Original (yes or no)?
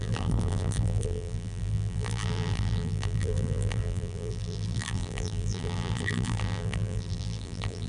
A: no